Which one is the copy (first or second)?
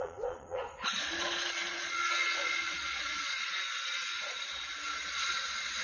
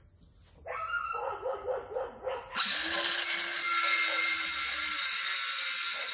first